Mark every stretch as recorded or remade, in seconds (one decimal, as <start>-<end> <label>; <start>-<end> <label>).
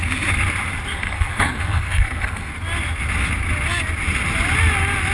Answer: 0.0-1.0 recorded; 1.0-2.5 remade; 2.5-5.1 recorded